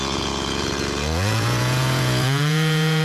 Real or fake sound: fake